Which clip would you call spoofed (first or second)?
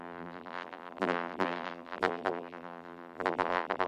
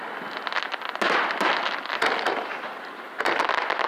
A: first